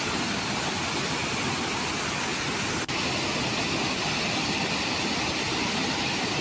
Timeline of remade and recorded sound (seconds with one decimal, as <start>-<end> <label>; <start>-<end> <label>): 0.0-6.4 recorded